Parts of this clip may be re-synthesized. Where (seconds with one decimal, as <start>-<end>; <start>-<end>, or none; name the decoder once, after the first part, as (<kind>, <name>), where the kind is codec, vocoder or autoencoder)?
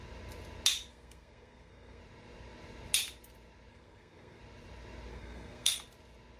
0.9-2.0 (codec, SNAC); 3.7-4.4; 5.1-5.8